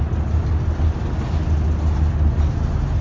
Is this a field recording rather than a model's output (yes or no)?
yes